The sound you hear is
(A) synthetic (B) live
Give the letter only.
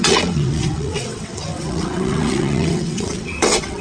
A